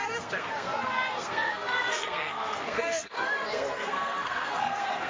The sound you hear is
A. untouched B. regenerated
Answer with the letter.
B